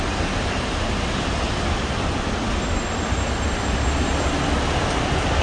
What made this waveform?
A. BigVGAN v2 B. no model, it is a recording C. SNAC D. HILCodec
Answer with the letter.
B